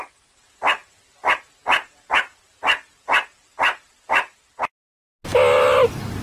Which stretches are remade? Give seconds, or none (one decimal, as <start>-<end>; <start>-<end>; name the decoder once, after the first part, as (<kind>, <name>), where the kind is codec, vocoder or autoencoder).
none